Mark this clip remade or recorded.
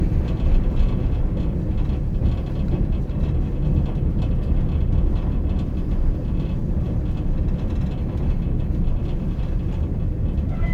recorded